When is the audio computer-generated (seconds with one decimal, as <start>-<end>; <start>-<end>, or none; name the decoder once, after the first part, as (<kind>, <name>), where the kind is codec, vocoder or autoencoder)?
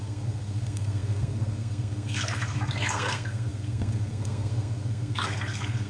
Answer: 0.0-5.9 (codec, SNAC)